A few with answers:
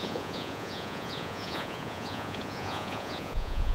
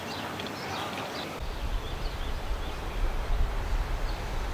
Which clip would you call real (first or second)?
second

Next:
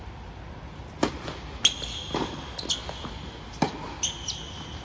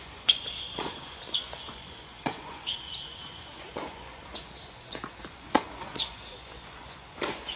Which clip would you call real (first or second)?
first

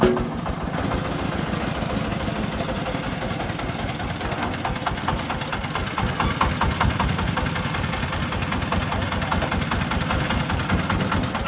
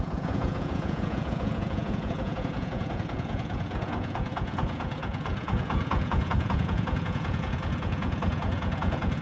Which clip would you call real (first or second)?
first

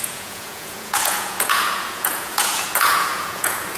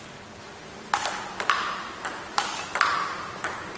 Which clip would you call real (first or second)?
second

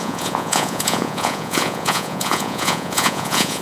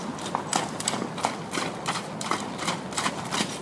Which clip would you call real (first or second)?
second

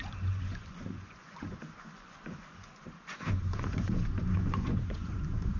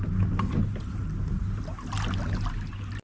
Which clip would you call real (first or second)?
second